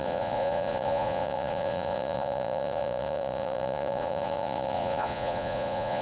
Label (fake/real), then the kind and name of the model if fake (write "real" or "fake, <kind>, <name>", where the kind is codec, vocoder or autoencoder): fake, vocoder, Vocos